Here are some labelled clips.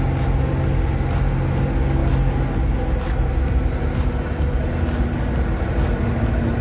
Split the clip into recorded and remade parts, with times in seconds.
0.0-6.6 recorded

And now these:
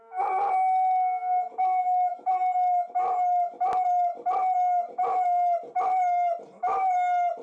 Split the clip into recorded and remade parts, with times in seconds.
0.0-1.8 recorded; 1.8-2.3 remade; 2.3-7.4 recorded

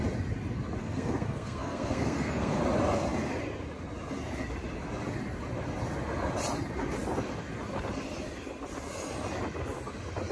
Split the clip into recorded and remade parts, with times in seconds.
0.0-0.8 recorded; 0.8-2.6 remade; 2.6-10.3 recorded